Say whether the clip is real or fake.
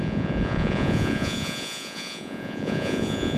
fake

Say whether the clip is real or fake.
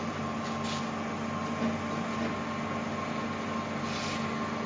real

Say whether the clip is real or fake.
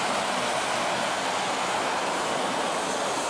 real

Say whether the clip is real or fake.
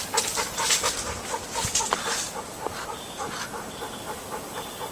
real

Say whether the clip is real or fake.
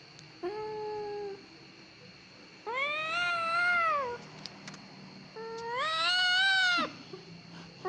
real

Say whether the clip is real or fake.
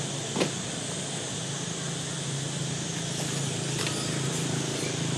real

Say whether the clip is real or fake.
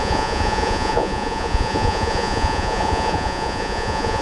fake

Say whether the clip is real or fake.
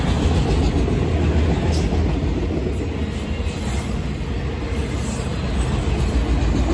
real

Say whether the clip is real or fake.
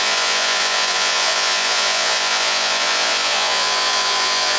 fake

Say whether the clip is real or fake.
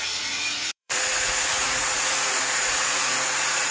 fake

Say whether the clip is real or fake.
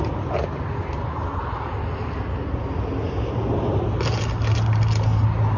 real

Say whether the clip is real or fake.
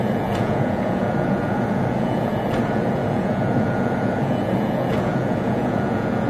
fake